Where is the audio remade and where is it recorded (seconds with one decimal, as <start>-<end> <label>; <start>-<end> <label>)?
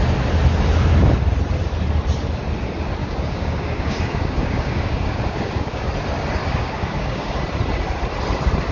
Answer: 0.0-3.0 recorded; 3.0-5.9 remade; 5.9-6.4 recorded; 6.4-7.3 remade; 7.3-8.7 recorded